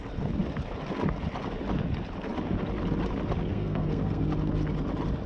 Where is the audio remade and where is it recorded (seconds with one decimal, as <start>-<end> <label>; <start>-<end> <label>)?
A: 0.0-3.5 recorded; 3.5-4.2 remade; 4.2-5.3 recorded